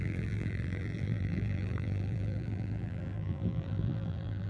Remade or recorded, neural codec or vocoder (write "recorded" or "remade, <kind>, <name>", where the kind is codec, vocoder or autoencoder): remade, vocoder, BigVGAN v2